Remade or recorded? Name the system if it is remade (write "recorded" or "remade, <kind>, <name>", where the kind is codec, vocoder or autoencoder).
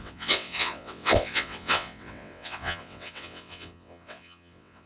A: remade, vocoder, WaveNeXt